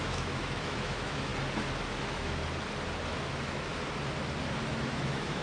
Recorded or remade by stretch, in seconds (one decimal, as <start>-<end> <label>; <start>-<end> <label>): 0.0-1.3 remade; 1.3-2.0 recorded; 2.0-2.4 remade; 2.4-3.3 recorded; 3.3-3.7 remade; 3.7-4.7 recorded; 4.7-5.4 remade